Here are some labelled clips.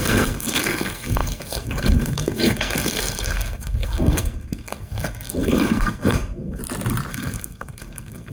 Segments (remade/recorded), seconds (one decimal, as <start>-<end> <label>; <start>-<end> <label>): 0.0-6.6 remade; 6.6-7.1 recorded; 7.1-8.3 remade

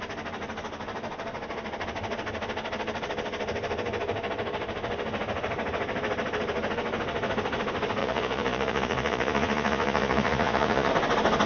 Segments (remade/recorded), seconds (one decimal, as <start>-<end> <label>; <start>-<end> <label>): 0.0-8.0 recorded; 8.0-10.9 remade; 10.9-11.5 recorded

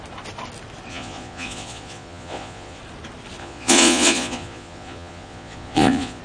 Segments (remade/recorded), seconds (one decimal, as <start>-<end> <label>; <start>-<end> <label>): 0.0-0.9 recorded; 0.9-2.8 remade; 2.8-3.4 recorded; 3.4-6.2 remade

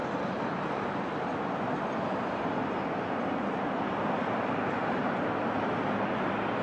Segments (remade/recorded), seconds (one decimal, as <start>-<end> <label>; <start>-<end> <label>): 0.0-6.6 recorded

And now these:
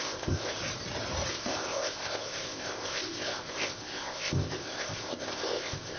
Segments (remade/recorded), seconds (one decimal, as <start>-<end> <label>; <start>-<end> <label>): 0.0-0.6 remade; 0.6-1.3 recorded; 1.3-6.0 remade

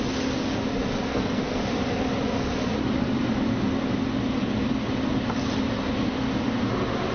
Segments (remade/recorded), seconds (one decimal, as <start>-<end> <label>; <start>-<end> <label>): 0.0-1.1 recorded; 1.1-1.6 remade; 1.6-7.1 recorded

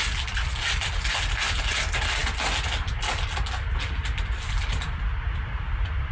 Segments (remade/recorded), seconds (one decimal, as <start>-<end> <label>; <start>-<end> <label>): 0.0-6.1 recorded

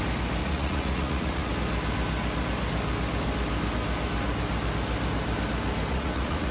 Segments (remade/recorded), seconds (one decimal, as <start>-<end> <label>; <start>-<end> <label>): 0.0-0.4 recorded; 0.4-1.5 remade; 1.5-5.9 recorded; 5.9-6.5 remade